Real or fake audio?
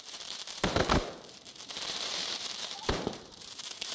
fake